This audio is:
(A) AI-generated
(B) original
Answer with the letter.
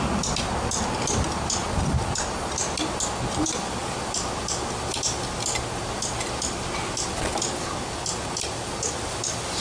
B